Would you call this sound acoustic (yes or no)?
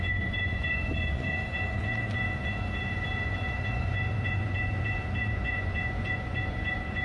no